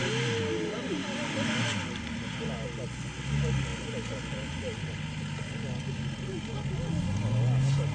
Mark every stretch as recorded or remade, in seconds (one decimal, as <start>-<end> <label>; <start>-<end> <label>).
0.0-7.9 recorded